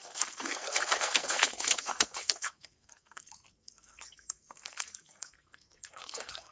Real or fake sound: fake